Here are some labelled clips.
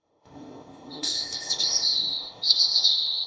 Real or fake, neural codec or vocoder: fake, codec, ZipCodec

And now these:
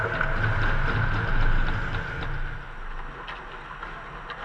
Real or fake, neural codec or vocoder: real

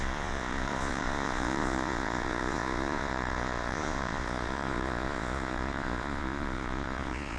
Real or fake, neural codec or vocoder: fake, vocoder, Vocos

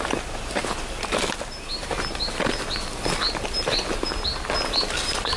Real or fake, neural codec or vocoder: real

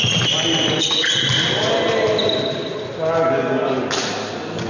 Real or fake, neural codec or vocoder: real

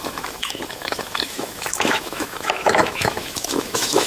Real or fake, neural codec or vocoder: fake, autoencoder, DAC-VAE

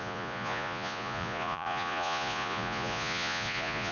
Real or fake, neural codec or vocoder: fake, vocoder, Vocos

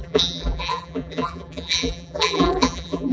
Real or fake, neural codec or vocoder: fake, vocoder, BigVGAN v2